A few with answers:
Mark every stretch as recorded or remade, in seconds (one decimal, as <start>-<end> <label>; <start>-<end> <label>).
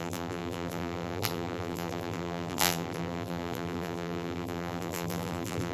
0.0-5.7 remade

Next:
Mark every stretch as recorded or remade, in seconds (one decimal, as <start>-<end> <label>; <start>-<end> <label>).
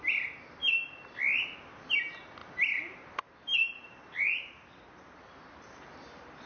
0.0-0.6 recorded; 0.6-1.1 remade; 1.1-2.4 recorded; 2.4-6.5 remade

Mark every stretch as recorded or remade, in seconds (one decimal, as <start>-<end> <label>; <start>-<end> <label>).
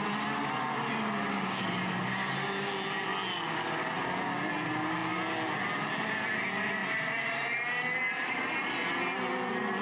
0.0-6.8 recorded; 6.8-7.6 remade; 7.6-8.1 recorded; 8.1-8.9 remade; 8.9-9.8 recorded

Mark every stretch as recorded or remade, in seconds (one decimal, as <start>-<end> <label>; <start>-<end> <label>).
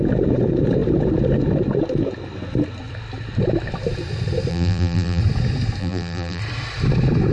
0.0-4.5 recorded; 4.5-5.2 remade; 5.2-5.8 recorded; 5.8-6.4 remade; 6.4-7.3 recorded